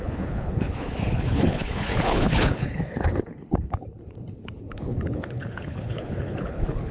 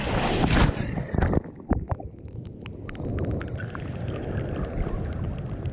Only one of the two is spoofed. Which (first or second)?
first